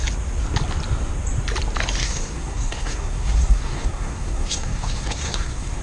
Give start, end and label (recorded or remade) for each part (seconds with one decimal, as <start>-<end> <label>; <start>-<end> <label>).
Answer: 0.0-2.0 recorded; 2.0-5.8 remade